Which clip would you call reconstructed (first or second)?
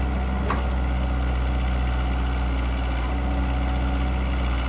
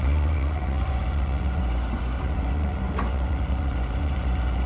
second